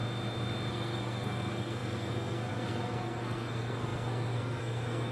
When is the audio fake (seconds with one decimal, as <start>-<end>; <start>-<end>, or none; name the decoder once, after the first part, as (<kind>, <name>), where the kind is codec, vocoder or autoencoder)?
0.7-5.1 (codec, SNAC)